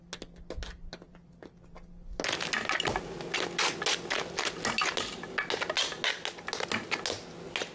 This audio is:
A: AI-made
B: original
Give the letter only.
B